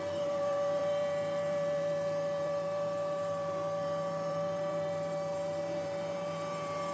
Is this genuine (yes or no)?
no